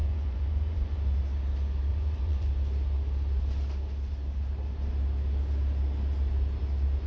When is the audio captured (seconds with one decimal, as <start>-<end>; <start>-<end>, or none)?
1.0-1.9; 2.5-7.1